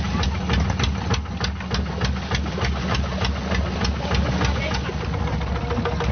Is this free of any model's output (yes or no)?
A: yes